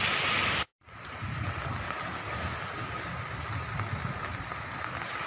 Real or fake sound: real